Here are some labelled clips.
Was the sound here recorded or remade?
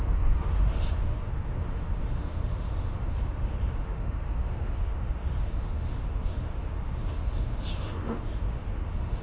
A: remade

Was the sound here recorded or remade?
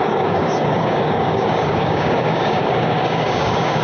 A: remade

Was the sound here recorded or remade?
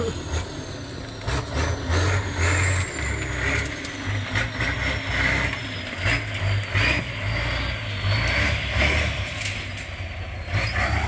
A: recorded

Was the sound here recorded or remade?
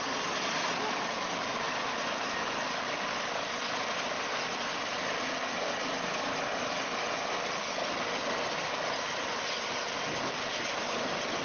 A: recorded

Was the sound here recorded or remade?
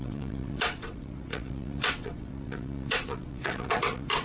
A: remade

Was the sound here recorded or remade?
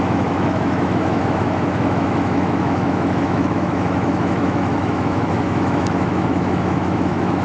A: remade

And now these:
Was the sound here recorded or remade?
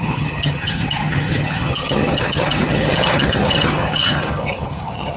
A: remade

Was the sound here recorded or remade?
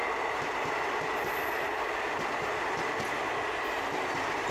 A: recorded